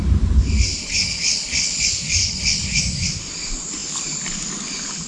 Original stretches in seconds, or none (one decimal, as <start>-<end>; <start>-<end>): 0.0-0.8; 1.8-2.2; 2.8-5.1